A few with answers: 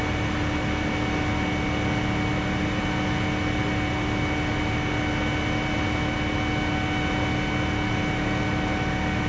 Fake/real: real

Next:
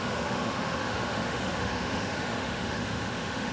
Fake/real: fake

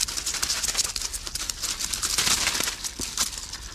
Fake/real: real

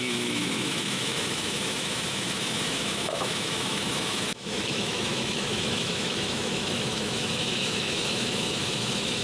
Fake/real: fake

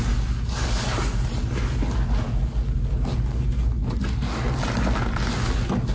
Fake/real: real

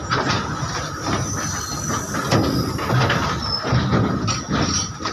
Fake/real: real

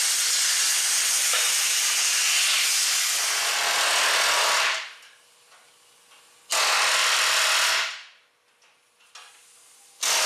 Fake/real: real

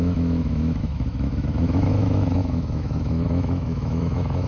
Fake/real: fake